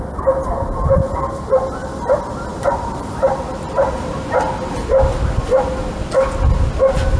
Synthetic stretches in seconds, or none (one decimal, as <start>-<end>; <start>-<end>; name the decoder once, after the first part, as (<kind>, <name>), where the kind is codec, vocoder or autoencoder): 2.5-4.8 (vocoder, BigVGAN v2)